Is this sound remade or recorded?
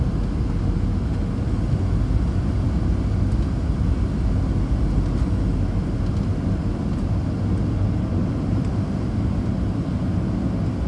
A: recorded